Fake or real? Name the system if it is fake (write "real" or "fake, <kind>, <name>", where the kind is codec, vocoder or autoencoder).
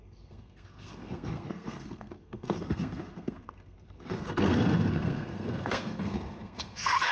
fake, codec, SNAC